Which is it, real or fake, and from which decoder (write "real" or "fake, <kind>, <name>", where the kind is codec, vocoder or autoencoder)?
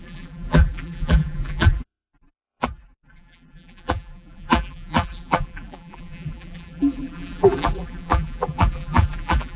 fake, vocoder, BigVGAN v2